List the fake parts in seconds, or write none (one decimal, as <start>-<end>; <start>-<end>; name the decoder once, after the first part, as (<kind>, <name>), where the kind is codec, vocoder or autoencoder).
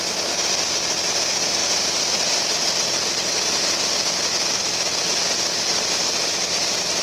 none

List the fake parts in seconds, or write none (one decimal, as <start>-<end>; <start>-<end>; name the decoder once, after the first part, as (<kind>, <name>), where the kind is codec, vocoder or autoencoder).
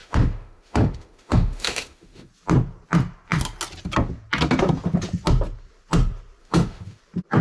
0.0-2.3 (autoencoder, DAC-VAE); 6.4-7.0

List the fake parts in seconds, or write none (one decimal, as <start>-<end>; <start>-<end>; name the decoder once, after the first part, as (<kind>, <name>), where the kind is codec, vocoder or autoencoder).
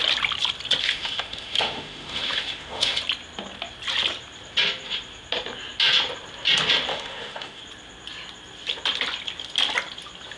0.8-3.0 (autoencoder, DAC-VAE); 6.9-7.6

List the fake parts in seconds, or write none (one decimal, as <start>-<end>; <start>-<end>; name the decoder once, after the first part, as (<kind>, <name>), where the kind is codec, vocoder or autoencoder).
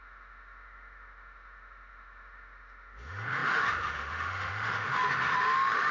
0.0-5.9 (autoencoder, DAC-VAE)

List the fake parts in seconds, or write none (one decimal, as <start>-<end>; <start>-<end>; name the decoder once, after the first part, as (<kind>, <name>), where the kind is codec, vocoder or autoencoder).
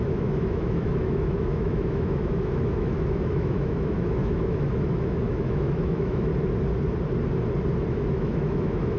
0.0-6.3 (autoencoder, DAC-VAE); 7.9-9.0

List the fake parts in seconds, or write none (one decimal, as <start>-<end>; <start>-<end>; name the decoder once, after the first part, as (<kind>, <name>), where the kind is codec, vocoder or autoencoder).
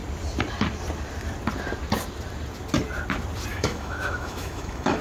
3.5-5.0 (autoencoder, DAC-VAE)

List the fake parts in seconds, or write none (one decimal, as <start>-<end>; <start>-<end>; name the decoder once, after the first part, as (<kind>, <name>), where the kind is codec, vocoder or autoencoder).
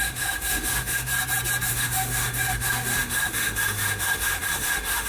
0.0-1.1 (autoencoder, DAC-VAE); 1.7-5.1